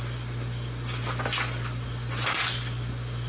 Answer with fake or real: real